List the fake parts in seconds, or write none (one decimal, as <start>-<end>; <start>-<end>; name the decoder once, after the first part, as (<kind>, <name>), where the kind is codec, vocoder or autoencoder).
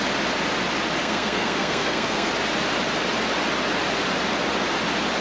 1.0-2.3 (codec, SNAC)